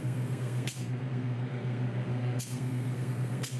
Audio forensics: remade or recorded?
remade